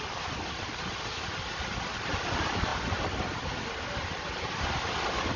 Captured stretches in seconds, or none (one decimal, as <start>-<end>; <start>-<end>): 0.0-5.4